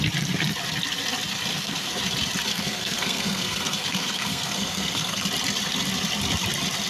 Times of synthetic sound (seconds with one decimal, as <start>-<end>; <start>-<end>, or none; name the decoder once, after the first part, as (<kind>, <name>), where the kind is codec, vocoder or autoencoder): 1.5-2.0 (codec, SNAC); 2.5-5.2